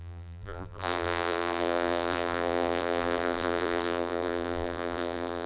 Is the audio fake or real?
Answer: fake